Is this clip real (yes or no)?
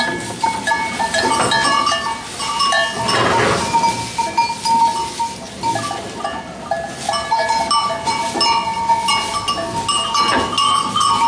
yes